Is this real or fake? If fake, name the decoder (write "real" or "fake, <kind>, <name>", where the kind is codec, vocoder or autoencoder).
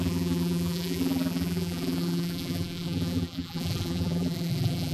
fake, vocoder, BigVGAN v2